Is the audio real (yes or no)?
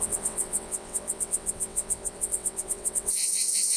no